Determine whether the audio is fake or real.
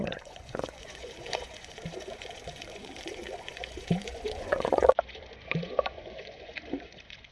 fake